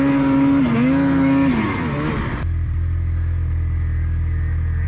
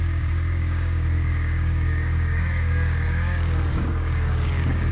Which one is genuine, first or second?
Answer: first